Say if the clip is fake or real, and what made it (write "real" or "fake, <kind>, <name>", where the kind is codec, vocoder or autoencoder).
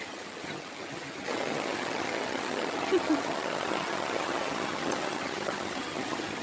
fake, vocoder, HiFi-GAN